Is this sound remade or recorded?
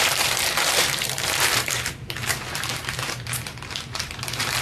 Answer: remade